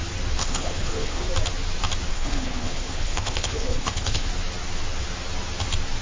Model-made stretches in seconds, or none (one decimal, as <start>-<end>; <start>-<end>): 0.4-1.3; 2.1-4.3